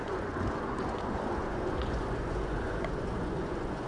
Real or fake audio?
fake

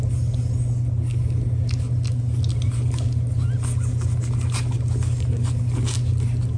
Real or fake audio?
real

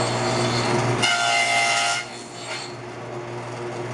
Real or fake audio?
real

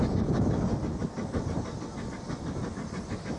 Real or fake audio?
real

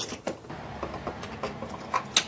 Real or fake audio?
real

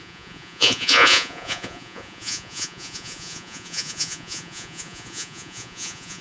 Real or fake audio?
fake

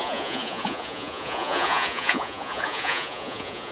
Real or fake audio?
fake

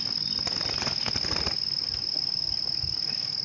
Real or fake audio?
real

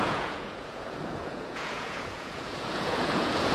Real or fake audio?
fake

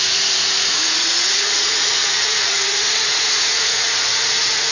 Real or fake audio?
fake